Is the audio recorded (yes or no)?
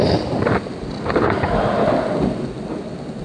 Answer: yes